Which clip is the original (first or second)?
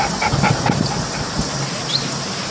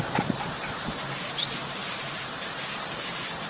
first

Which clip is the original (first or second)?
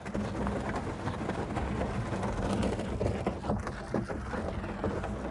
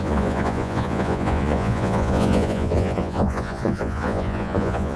first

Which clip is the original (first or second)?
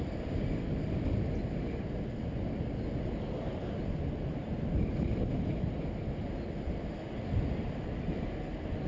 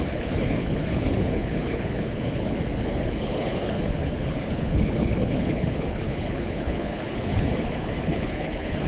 first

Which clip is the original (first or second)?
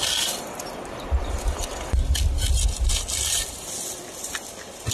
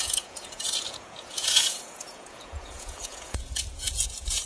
first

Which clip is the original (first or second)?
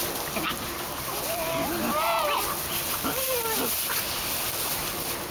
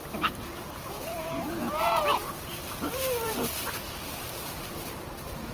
first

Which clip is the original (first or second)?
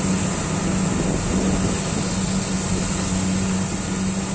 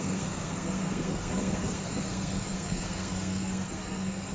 first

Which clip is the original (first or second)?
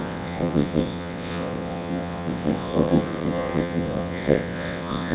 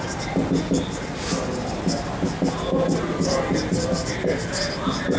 second